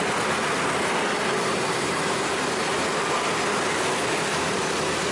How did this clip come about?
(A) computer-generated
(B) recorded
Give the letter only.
B